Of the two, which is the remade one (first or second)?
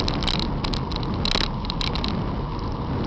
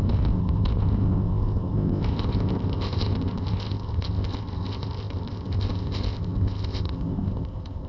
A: second